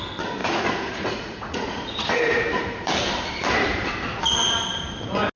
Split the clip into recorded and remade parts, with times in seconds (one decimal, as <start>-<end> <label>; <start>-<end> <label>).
0.0-0.4 recorded; 0.4-2.4 remade; 2.4-5.4 recorded